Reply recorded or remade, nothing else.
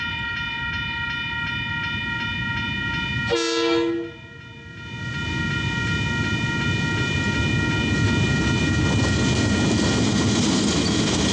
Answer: recorded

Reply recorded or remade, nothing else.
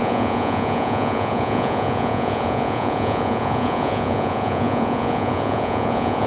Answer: remade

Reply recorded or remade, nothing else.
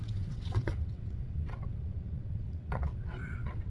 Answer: remade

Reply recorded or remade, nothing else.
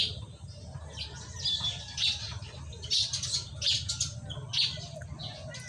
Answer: recorded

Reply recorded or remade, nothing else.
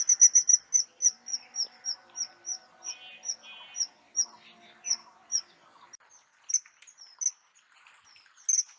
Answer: recorded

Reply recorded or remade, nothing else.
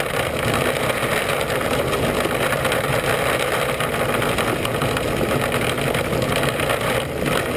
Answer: recorded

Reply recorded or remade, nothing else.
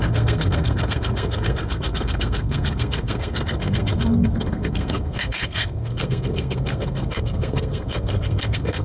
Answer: remade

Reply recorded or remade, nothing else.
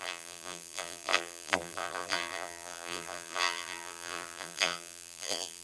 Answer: remade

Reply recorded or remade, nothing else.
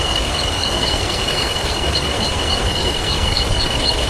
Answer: remade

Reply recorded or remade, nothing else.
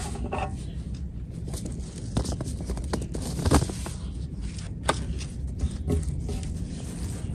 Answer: recorded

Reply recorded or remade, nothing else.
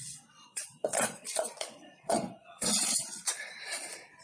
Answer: remade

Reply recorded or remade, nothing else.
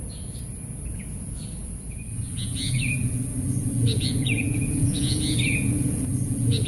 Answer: remade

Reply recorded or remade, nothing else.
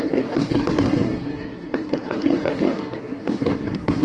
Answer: remade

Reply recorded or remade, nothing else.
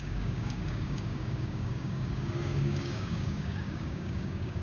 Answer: remade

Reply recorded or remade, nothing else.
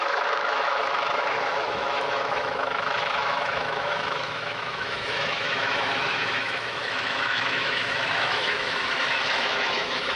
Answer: remade